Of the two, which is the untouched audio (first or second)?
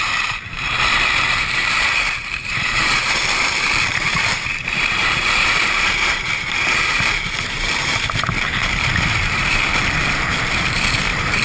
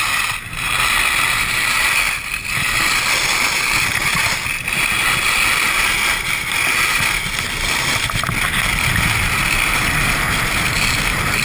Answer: second